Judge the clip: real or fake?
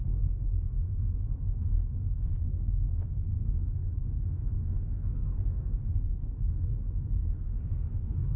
fake